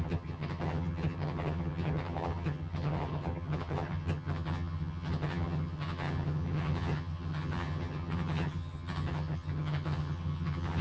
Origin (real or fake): fake